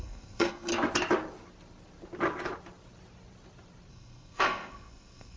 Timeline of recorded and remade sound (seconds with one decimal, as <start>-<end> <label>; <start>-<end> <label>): 0.0-0.7 remade; 0.7-3.9 recorded; 3.9-5.4 remade